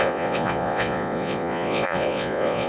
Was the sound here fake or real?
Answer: fake